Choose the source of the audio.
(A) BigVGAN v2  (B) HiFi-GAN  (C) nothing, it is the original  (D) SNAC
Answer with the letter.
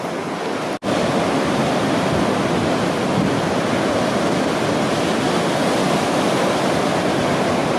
C